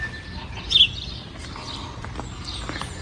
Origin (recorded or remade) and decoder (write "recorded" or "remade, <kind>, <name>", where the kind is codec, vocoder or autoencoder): recorded